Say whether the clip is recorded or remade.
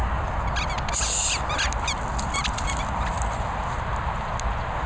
recorded